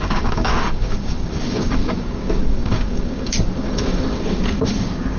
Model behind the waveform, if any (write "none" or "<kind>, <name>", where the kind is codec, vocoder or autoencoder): codec, DAC